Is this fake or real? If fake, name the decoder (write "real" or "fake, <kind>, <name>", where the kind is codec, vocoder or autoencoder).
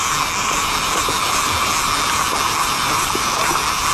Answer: real